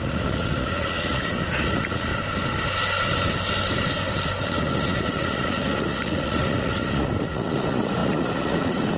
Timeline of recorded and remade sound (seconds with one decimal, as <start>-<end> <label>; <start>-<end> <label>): 0.0-2.1 remade; 2.1-4.4 recorded; 4.4-9.0 remade